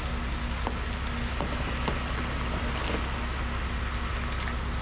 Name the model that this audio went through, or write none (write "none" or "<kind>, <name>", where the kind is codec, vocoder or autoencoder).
none